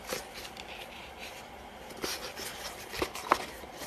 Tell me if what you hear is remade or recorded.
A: recorded